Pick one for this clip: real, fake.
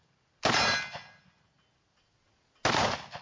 real